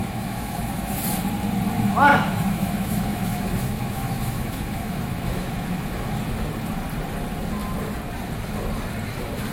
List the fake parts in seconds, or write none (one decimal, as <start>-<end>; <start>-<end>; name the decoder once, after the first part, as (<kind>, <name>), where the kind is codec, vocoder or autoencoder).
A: 0.0-1.0 (autoencoder, DAC-VAE); 2.1-6.1